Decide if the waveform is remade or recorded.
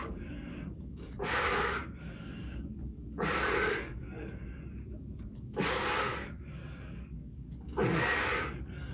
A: remade